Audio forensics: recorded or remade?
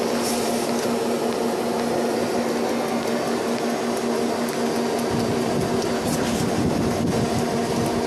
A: recorded